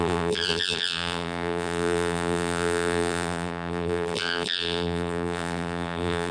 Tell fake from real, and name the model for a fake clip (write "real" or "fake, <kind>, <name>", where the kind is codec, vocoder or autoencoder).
fake, vocoder, BigVGAN v2